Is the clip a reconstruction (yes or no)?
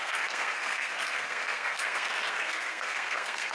yes